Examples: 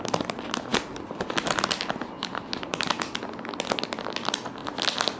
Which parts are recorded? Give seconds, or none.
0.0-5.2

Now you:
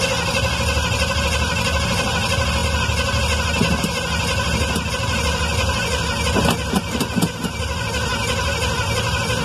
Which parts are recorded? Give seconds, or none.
0.0-9.4

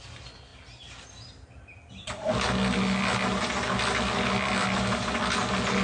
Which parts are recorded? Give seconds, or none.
0.0-5.8

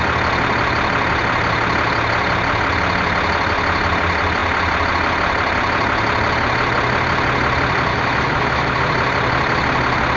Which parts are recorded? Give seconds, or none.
0.0-7.9; 8.8-10.2

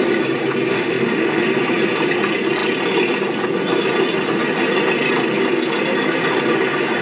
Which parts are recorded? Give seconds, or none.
0.0-0.7; 1.5-7.0

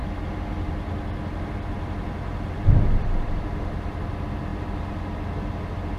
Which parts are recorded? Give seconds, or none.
0.0-6.0